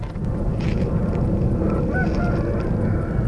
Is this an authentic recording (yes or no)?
yes